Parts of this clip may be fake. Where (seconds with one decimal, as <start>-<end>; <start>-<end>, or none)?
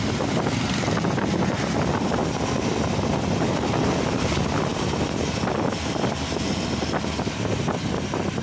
none